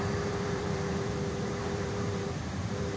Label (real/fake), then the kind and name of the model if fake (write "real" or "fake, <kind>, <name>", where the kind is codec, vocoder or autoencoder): fake, vocoder, BigVGAN v2